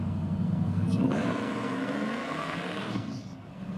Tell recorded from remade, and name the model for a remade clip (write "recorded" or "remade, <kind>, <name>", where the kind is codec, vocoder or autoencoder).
remade, codec, SNAC